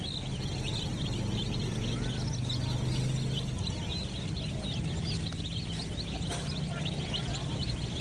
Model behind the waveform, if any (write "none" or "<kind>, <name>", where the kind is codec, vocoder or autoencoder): none